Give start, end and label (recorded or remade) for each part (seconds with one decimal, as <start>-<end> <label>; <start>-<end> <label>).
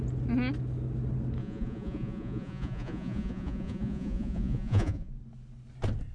0.0-1.4 recorded; 1.4-5.1 remade; 5.1-6.1 recorded